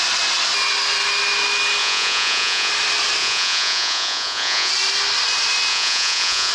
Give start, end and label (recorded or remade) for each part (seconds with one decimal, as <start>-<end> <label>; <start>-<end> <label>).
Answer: 0.0-1.8 recorded; 1.8-2.7 remade; 2.7-3.2 recorded; 3.2-4.7 remade; 4.7-5.7 recorded; 5.7-6.5 remade